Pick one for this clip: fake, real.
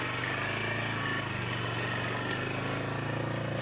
real